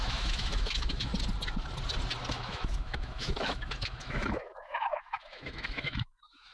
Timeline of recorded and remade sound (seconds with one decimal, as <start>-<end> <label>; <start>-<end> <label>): 0.0-1.1 remade; 1.1-2.3 recorded; 2.3-6.5 remade